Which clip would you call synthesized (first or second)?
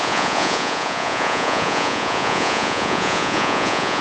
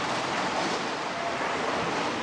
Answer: first